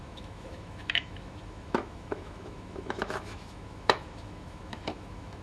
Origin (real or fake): fake